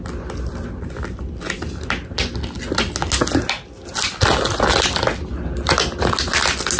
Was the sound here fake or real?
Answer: real